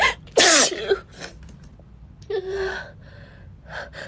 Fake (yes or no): yes